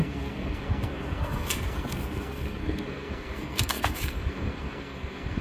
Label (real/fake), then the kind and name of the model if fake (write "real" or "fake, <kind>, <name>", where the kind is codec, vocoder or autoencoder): fake, codec, SNAC